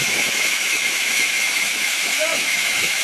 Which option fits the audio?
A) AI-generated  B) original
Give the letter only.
A